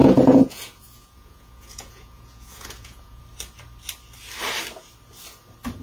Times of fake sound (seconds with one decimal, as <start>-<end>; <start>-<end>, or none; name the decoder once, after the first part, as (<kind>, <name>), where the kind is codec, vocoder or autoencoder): 0.0-3.2 (vocoder, Vocos)